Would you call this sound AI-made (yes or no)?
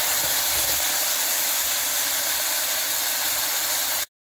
no